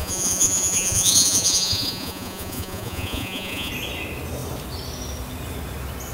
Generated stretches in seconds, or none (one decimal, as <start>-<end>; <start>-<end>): 0.0-3.7